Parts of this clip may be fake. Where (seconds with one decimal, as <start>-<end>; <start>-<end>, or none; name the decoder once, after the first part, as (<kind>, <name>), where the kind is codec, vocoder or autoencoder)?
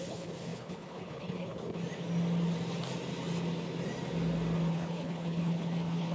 0.0-1.8 (codec, HILCodec); 4.7-6.1